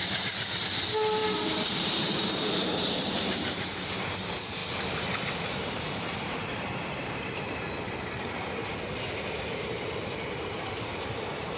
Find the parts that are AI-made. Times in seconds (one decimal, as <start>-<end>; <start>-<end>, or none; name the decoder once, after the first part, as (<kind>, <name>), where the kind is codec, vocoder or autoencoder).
0.0-4.6 (vocoder, BigVGAN v2); 5.2-8.6; 9.4-11.6